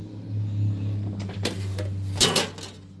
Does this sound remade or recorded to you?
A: recorded